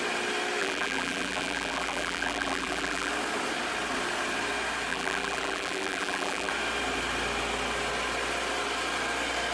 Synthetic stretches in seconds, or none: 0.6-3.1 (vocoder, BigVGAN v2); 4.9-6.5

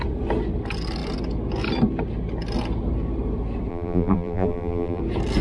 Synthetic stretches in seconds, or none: 3.7-5.0 (vocoder, BigVGAN v2)

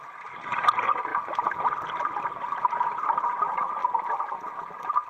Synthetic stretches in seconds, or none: 1.1-1.7 (vocoder, BigVGAN v2)

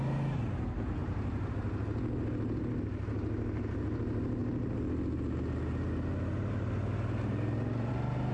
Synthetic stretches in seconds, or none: none

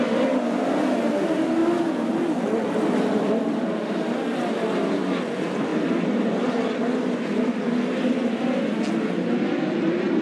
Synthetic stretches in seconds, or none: none

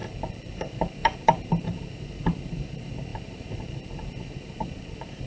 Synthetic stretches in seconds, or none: 0.5-5.3 (vocoder, BigVGAN v2)